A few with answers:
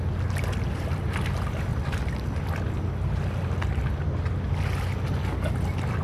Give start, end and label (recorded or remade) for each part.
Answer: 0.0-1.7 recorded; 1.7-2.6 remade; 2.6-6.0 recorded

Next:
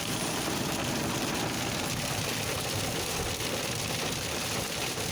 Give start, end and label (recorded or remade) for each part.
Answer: 0.0-0.8 remade; 0.8-3.9 recorded; 3.9-5.1 remade

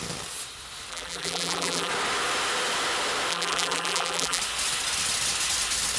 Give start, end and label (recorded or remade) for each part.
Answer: 0.0-0.9 recorded; 0.9-1.9 remade; 1.9-3.3 recorded; 3.3-4.4 remade; 4.4-6.0 recorded

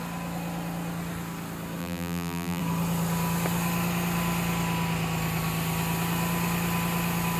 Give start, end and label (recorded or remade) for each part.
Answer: 0.0-1.8 recorded; 1.8-2.6 remade; 2.6-7.4 recorded

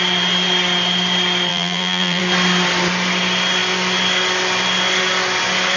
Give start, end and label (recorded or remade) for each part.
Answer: 0.0-1.5 recorded; 1.5-2.2 remade; 2.2-5.8 recorded